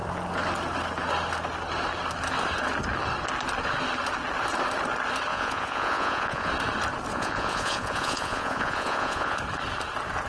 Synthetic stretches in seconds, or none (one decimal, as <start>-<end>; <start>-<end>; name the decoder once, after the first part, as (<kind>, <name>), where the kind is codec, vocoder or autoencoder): 5.3-6.5 (vocoder, Vocos); 7.1-9.4